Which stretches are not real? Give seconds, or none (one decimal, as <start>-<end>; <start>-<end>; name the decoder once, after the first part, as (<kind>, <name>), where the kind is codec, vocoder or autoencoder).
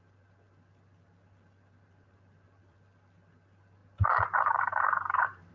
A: 3.8-5.5 (vocoder, BigVGAN v2)